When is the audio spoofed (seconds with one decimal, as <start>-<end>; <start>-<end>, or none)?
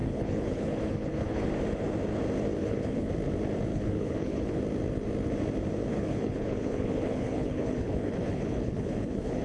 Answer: 0.0-1.5; 2.6-3.1; 3.7-4.6; 5.9-9.4